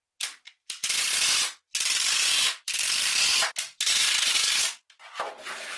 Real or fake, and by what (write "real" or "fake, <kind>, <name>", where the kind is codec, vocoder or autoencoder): real